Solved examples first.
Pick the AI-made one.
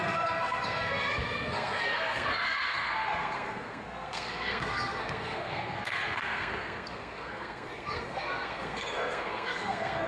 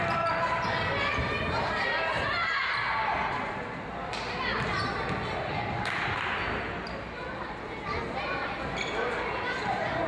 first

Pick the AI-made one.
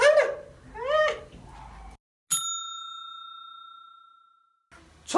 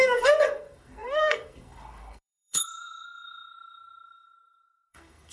second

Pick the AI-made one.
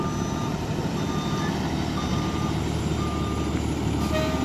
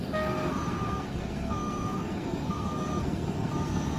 second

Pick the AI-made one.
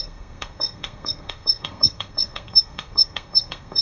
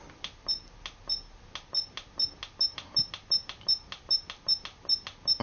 first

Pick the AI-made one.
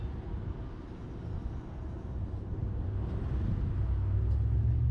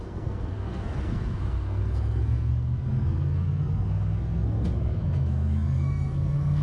second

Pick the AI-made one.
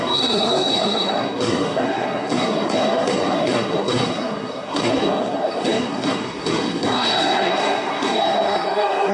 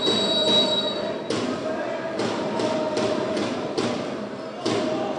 first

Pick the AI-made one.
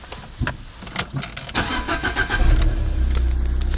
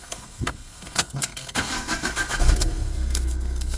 second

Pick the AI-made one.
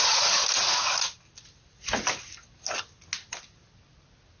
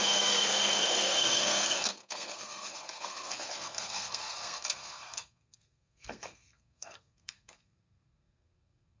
second